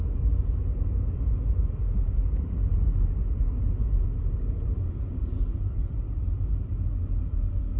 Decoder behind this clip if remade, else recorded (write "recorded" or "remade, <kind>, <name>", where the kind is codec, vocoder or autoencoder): recorded